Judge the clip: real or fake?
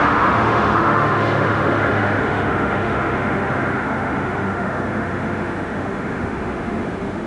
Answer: fake